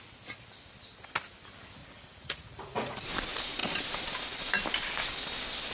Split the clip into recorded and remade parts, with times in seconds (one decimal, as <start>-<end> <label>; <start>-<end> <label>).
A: 0.0-1.8 recorded; 1.8-3.0 remade; 3.0-5.7 recorded

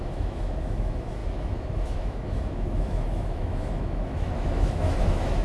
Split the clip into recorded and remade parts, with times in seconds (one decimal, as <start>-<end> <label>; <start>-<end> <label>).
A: 0.0-5.4 remade

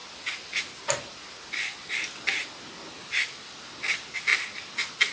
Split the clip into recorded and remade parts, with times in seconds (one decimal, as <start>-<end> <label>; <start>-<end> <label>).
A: 0.0-5.1 recorded

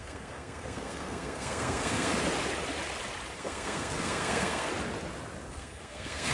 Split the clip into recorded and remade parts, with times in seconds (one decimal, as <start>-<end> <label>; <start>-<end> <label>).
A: 0.0-2.1 remade; 2.1-3.4 recorded; 3.4-4.7 remade; 4.7-5.5 recorded; 5.5-6.3 remade

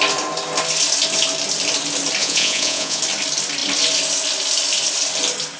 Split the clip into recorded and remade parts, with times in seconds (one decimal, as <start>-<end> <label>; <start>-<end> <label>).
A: 0.0-2.2 recorded; 2.2-3.0 remade; 3.0-5.6 recorded

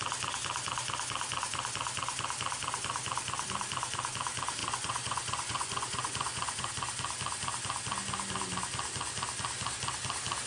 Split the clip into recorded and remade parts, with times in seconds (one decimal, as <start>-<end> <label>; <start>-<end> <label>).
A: 0.0-4.6 recorded; 4.6-6.7 remade; 6.7-10.5 recorded